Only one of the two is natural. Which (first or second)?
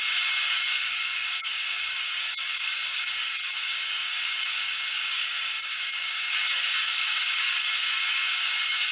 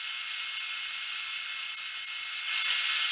second